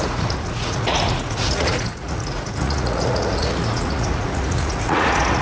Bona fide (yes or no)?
no